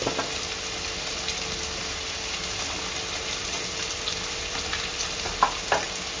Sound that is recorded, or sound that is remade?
recorded